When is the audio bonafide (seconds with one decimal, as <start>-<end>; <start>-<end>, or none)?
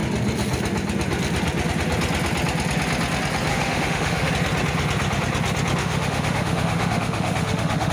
0.0-3.5; 4.3-5.8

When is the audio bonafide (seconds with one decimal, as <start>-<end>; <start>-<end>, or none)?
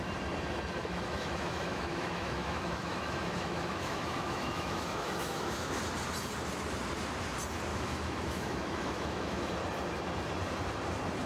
0.0-0.8; 5.8-7.7; 9.5-11.3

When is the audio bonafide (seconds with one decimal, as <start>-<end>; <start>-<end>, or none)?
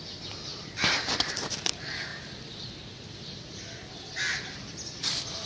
0.0-5.5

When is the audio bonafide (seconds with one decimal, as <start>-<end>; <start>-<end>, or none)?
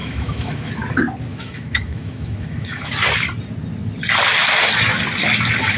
0.7-1.3; 2.9-5.8